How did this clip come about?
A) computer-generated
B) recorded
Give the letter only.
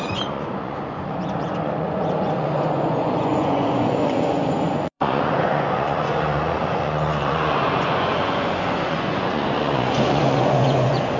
A